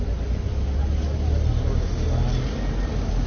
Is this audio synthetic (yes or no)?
no